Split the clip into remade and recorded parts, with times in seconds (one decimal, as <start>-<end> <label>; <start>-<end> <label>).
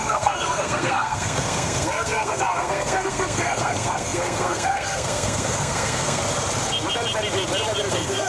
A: 0.0-6.2 remade; 6.2-7.9 recorded; 7.9-8.3 remade